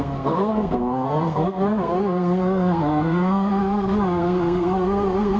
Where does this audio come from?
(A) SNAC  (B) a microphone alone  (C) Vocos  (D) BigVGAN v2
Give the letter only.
A